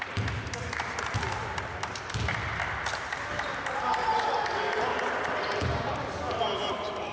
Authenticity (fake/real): real